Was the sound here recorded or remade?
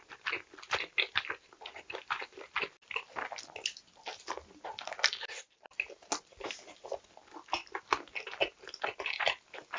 recorded